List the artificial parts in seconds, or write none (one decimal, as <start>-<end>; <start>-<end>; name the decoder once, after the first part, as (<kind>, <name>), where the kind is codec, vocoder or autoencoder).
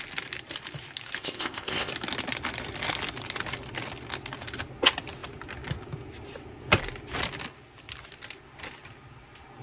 1.2-1.9 (codec, ZipCodec)